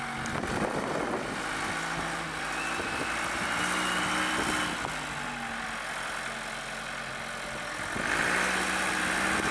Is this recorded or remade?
recorded